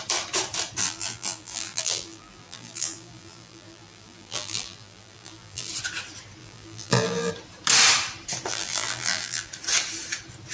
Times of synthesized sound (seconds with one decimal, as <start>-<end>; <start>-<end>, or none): 0.8-5.7; 6.4-7.3; 8.5-9.5